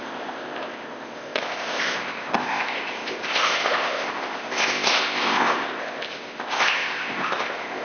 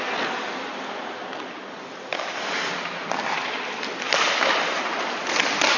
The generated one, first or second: first